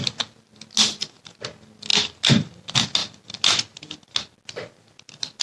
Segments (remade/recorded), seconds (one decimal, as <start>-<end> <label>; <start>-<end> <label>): 0.0-5.4 recorded